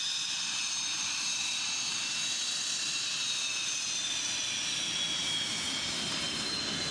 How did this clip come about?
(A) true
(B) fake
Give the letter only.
A